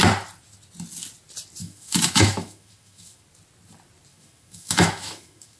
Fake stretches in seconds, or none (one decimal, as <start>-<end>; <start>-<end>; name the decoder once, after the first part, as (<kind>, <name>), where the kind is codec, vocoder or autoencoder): 1.6-3.2 (autoencoder, DAC-VAE); 4.1-5.6